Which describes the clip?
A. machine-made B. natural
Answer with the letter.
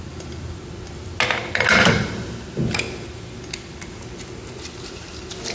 B